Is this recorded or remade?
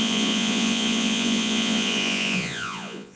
remade